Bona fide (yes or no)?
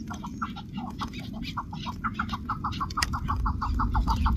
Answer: yes